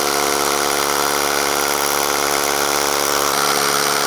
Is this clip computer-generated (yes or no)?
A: no